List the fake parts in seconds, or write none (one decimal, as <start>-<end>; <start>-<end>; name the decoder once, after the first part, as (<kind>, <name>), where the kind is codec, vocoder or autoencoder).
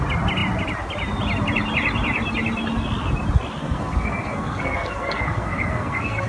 3.6-6.3 (codec, SNAC)